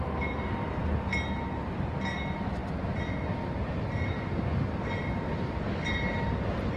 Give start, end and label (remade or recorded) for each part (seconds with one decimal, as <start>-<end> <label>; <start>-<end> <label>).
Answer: 0.0-6.8 recorded